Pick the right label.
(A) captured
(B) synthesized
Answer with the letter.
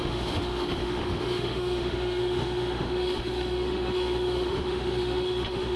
B